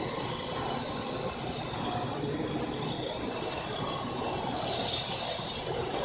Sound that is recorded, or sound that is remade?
recorded